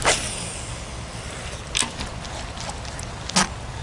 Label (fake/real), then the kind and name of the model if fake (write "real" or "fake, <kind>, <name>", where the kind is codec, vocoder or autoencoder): real